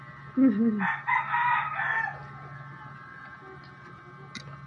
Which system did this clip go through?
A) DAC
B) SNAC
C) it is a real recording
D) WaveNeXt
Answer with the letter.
C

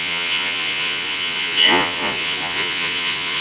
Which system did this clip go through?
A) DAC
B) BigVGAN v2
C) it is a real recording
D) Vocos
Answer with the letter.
D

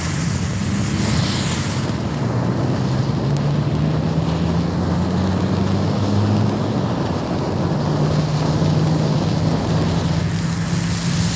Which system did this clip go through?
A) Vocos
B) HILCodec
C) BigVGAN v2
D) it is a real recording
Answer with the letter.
D